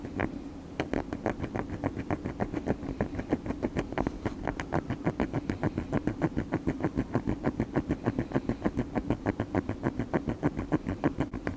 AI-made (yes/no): yes